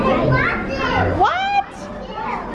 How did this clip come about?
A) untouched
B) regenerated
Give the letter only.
A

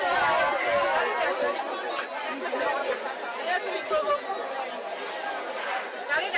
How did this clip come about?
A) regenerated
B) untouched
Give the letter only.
B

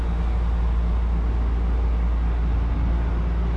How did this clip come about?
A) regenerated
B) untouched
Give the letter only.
B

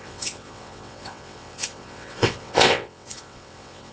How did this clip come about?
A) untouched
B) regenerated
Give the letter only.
B